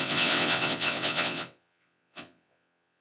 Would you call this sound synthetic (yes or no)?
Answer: yes